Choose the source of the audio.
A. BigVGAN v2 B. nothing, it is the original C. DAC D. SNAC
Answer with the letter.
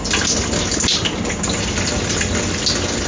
B